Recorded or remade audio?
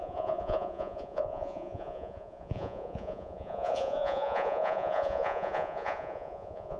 remade